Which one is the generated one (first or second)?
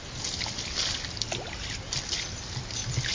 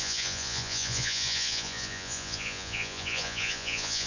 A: second